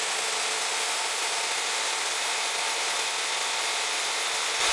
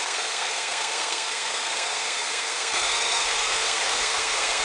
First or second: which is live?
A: first